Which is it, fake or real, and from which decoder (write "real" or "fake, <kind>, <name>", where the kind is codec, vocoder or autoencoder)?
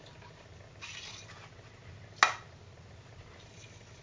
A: real